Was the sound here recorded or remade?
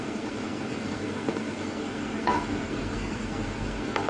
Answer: remade